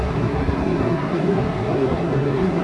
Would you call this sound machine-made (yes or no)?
yes